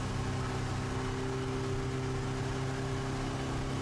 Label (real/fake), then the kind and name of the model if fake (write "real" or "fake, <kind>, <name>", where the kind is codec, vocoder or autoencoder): real